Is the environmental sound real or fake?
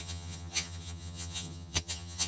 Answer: fake